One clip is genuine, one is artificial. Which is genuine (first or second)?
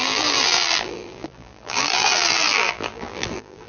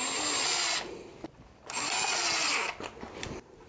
second